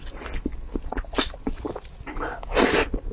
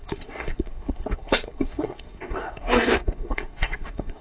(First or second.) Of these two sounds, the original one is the first